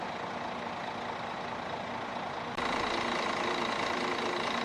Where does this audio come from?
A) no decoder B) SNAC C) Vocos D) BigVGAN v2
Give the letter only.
A